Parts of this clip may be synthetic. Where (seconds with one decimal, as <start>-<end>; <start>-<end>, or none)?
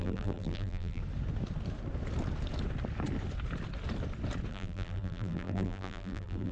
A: 0.0-1.0; 4.5-6.5